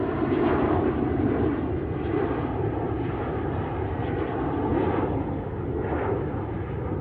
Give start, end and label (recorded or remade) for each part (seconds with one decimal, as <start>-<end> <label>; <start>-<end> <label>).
0.0-3.5 remade; 3.5-4.7 recorded; 4.7-5.5 remade; 5.5-7.0 recorded